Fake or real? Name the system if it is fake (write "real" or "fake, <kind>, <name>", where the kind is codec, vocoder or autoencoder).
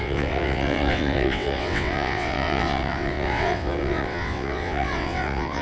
fake, vocoder, WaveNeXt